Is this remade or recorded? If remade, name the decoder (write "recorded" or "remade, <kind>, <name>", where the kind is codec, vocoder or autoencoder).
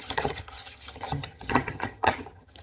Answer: remade, vocoder, HiFi-GAN